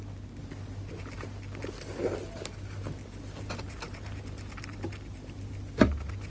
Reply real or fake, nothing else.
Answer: real